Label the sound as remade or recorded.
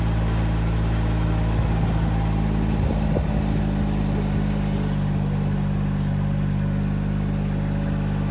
recorded